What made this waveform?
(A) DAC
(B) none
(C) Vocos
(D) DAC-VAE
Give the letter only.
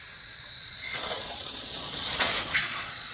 C